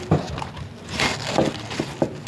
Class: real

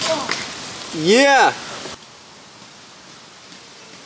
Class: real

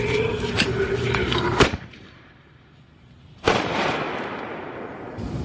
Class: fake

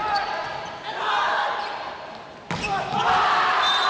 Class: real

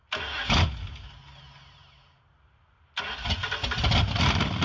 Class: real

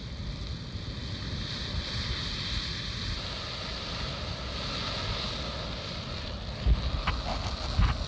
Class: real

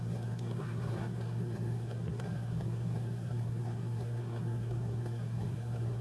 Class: fake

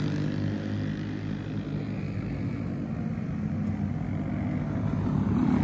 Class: real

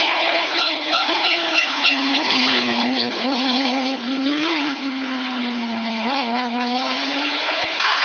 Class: fake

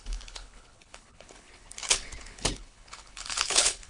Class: fake